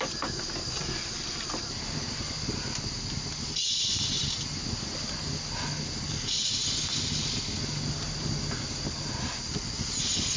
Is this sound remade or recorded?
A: recorded